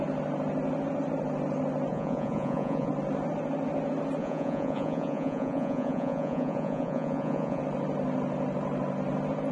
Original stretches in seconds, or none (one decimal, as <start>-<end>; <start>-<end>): 0.0-1.9; 2.9-4.2; 7.6-9.5